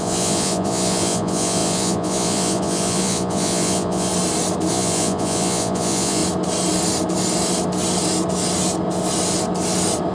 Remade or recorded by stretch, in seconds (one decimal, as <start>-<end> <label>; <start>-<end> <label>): 0.0-4.1 remade; 4.1-4.7 recorded; 4.7-6.2 remade; 6.2-10.1 recorded